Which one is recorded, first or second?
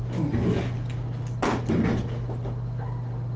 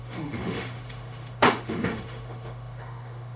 first